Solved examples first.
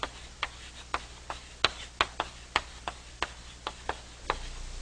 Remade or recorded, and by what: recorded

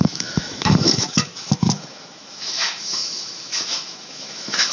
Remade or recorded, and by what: remade, autoencoder, DAC-VAE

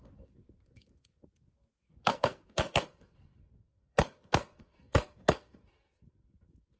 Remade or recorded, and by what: remade, codec, SNAC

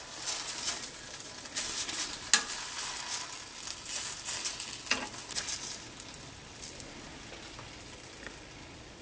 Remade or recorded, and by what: recorded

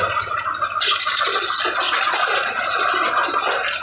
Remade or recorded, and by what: recorded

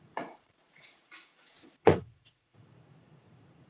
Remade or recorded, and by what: remade, vocoder, Vocos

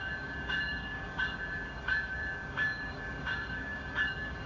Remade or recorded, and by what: remade, codec, DAC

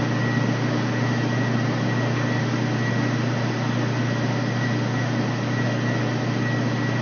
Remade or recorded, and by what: recorded